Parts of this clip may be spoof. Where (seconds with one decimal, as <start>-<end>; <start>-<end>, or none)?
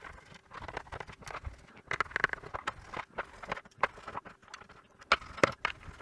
none